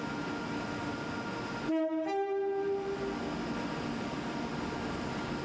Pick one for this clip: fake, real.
real